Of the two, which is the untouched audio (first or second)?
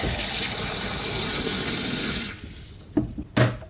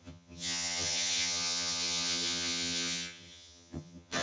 first